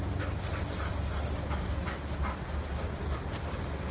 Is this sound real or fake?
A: real